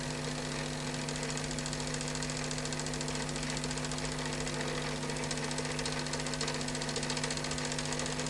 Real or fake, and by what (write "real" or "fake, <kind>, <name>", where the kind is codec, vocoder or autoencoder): real